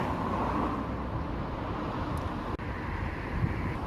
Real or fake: real